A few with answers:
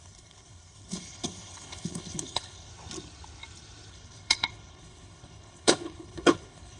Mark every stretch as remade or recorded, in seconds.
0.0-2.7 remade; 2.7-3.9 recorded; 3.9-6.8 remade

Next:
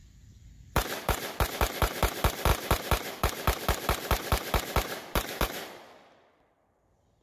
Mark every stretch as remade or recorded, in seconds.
0.0-7.2 remade

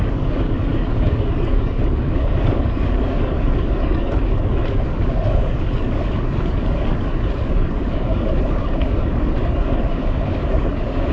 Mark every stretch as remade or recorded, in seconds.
0.0-11.1 remade

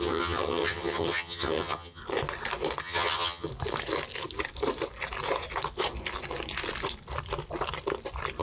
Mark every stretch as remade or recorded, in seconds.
0.0-2.0 remade; 2.0-2.8 recorded; 2.8-3.5 remade; 3.5-8.4 recorded

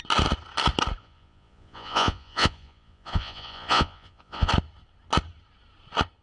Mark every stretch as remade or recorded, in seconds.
0.0-1.0 recorded; 1.0-4.5 remade; 4.5-6.2 recorded

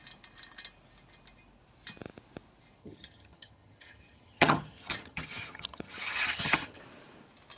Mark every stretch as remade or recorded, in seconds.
0.0-2.8 recorded; 2.8-6.8 remade; 6.8-7.6 recorded